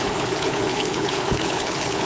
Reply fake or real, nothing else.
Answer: fake